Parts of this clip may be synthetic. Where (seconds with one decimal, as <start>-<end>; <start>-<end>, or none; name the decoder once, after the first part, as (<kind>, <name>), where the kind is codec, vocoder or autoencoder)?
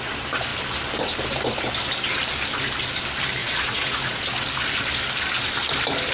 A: 3.4-4.2 (vocoder, Vocos)